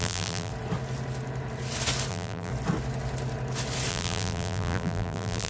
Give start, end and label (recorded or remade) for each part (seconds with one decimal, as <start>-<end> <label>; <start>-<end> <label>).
0.0-0.5 remade; 0.5-2.1 recorded; 2.1-2.5 remade; 2.5-3.9 recorded; 3.9-5.5 remade